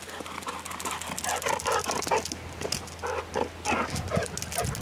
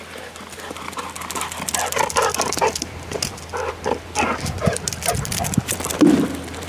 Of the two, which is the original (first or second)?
first